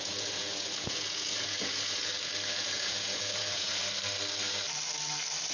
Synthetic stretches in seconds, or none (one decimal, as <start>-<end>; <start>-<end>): 0.0-2.1; 2.6-3.8